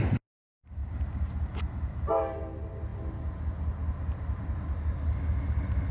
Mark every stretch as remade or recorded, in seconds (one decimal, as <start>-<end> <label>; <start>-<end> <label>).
0.0-5.9 recorded